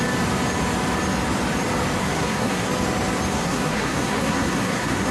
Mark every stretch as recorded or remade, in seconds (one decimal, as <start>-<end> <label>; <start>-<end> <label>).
0.0-2.0 recorded; 2.0-2.7 remade; 2.7-3.3 recorded; 3.3-5.1 remade